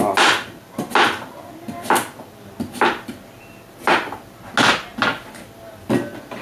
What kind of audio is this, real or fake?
real